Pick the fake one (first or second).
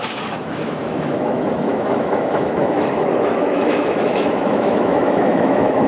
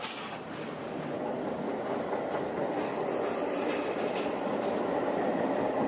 first